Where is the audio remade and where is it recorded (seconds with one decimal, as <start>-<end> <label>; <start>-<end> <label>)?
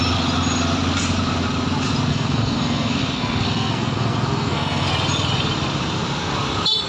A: 0.0-2.1 recorded; 2.1-4.9 remade; 4.9-6.9 recorded